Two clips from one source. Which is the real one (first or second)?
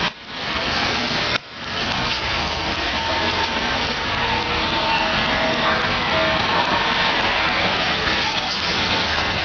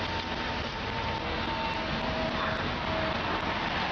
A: second